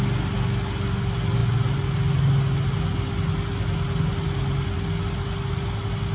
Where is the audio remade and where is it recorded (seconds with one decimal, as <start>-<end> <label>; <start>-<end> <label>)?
0.0-6.1 recorded